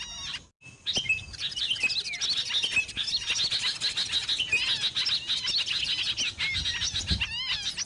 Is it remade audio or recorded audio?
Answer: recorded